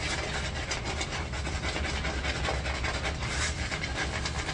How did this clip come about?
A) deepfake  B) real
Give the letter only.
B